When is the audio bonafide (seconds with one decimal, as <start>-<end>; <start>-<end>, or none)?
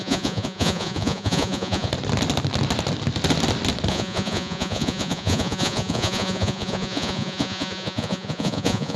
1.9-3.9